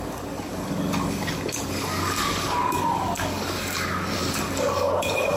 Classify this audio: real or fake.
fake